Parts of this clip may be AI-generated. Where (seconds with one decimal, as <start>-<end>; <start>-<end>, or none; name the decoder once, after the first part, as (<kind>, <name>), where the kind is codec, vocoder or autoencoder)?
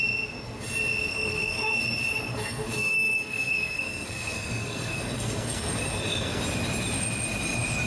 1.1-1.8 (codec, SNAC); 2.3-6.4